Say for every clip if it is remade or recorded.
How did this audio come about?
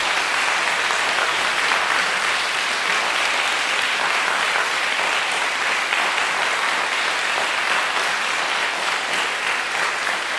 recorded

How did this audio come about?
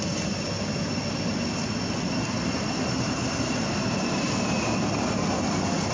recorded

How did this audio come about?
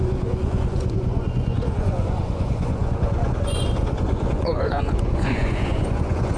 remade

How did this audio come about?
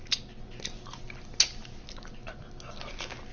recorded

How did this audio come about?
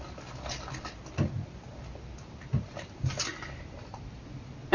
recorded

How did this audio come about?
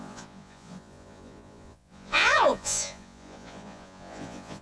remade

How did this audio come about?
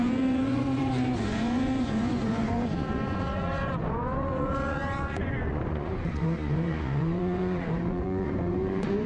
remade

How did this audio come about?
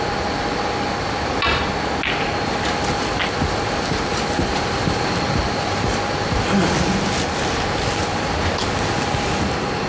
recorded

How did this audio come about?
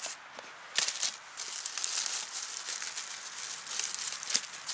recorded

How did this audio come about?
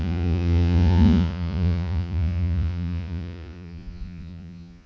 remade